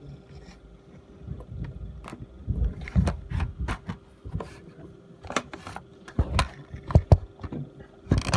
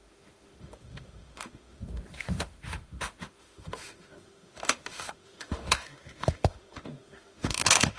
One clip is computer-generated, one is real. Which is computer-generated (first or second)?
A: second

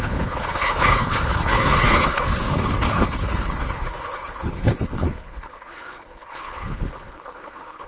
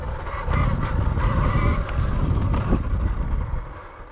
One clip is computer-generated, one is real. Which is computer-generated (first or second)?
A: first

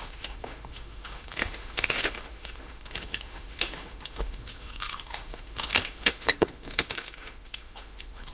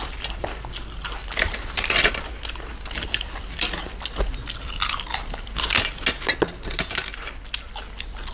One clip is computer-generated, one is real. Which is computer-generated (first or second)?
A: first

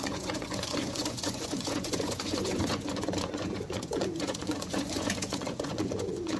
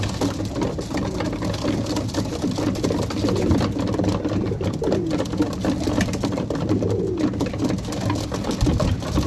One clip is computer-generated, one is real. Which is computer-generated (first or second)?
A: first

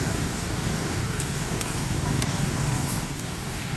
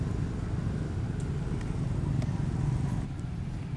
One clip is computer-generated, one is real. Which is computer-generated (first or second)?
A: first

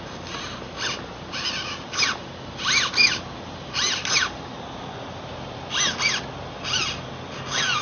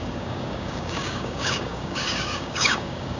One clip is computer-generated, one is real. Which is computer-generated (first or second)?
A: second